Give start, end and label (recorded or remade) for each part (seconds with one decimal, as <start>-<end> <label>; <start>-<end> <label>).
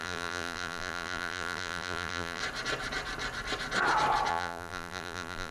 0.0-2.4 remade; 2.4-4.3 recorded; 4.3-5.5 remade